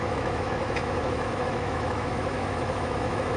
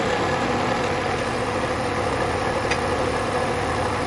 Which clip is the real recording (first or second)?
second